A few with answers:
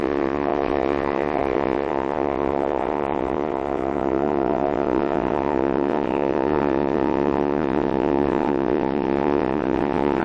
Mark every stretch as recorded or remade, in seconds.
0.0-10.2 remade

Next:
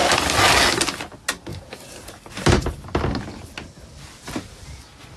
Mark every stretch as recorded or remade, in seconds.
0.0-1.5 recorded; 1.5-4.6 remade; 4.6-5.2 recorded

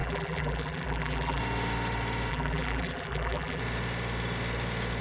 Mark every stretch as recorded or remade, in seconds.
0.0-1.4 remade; 1.4-2.3 recorded; 2.3-3.6 remade; 3.6-5.0 recorded